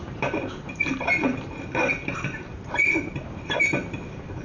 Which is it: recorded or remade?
remade